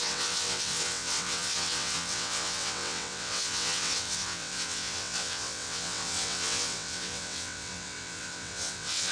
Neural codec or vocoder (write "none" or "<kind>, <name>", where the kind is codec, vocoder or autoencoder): vocoder, WaveNeXt